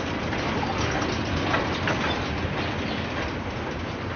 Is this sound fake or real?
real